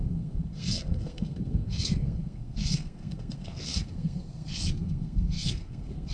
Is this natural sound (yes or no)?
no